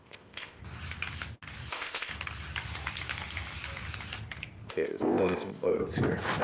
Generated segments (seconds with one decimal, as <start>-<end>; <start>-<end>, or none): 0.0-0.6; 1.7-2.1; 4.7-5.8